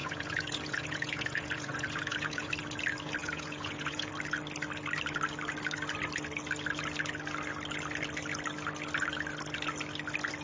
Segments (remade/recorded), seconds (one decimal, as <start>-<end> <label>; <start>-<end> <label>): 0.0-2.5 remade; 2.5-3.2 recorded; 3.2-4.1 remade; 4.1-10.4 recorded